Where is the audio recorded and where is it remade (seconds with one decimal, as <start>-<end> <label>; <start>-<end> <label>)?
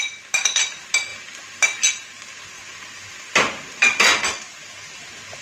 0.0-5.4 recorded